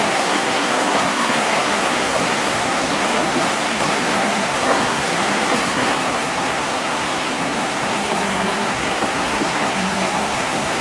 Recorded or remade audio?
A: remade